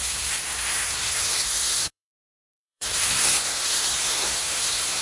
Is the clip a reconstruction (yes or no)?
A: yes